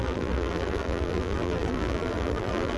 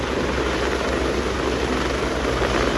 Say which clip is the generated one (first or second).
first